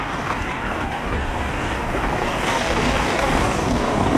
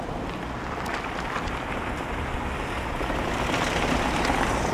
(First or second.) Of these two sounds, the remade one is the first